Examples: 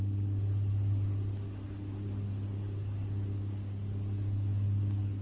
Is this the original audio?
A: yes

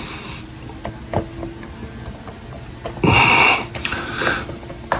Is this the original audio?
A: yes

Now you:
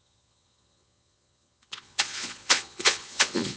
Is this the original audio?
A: no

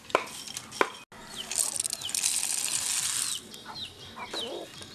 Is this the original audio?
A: yes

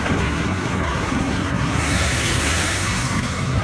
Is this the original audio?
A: no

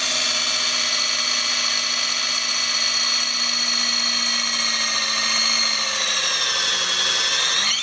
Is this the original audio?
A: yes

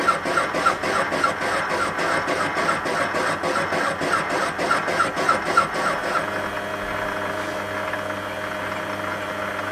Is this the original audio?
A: yes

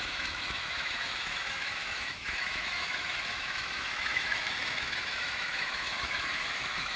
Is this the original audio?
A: no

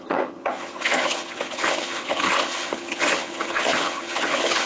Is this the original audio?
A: no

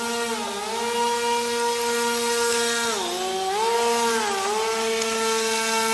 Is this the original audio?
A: yes